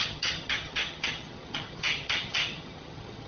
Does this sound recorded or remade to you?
remade